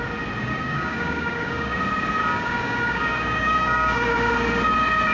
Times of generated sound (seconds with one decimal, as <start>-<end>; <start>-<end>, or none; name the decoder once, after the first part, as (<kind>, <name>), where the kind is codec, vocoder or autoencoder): 0.4-1.8 (codec, DAC); 2.2-4.3